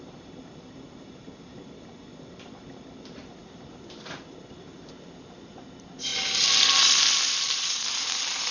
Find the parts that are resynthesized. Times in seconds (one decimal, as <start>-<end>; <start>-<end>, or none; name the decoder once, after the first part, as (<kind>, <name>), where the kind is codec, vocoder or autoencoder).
0.0-6.1 (vocoder, BigVGAN v2); 7.0-8.5